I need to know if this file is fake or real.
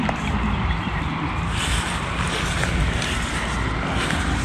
real